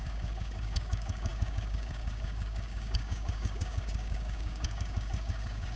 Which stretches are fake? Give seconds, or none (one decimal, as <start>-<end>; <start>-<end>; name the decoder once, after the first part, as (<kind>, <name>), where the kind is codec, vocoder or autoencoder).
0.0-5.8 (codec, DAC)